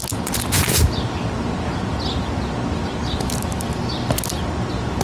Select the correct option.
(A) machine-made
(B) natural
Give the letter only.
B